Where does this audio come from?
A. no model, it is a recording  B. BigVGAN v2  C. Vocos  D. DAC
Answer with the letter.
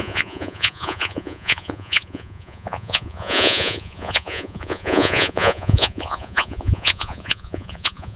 C